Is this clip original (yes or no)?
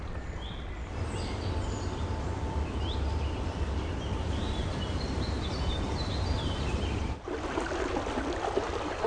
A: no